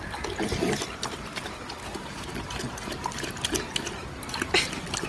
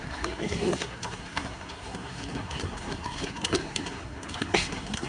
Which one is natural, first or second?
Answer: first